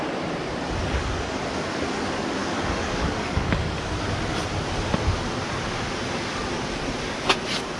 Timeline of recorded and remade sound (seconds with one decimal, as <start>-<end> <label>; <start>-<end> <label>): 0.0-0.8 recorded; 0.8-1.4 remade; 1.4-2.4 recorded; 2.4-3.9 remade; 3.9-7.8 recorded